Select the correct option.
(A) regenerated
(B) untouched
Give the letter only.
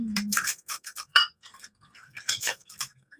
A